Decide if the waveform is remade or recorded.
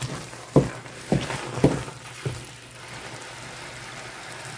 remade